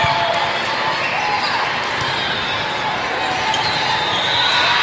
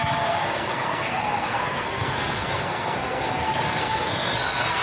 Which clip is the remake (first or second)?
second